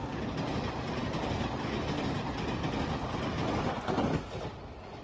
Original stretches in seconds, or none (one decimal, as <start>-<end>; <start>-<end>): 0.0-5.0